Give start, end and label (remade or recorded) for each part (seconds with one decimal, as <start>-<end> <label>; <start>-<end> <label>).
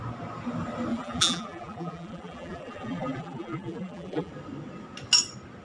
0.0-0.9 recorded; 0.9-4.3 remade; 4.3-5.6 recorded